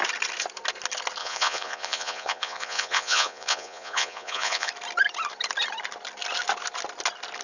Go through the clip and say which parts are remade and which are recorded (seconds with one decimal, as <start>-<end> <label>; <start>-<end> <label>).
0.0-1.2 recorded; 1.2-4.7 remade; 4.7-7.4 recorded